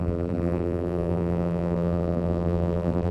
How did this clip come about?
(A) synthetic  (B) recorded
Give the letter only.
A